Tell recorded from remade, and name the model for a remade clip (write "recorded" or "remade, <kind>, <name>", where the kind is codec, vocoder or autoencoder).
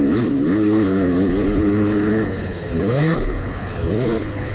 remade, codec, HILCodec